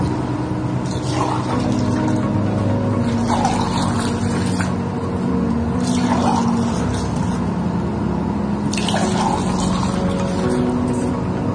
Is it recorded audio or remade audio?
recorded